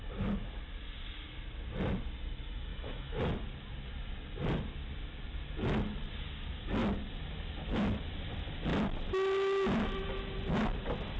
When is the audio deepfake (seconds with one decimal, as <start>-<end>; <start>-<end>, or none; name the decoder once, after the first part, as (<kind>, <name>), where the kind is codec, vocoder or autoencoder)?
2.7-3.2 (autoencoder, DAC-VAE)